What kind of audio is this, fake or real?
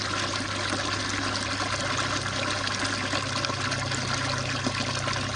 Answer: real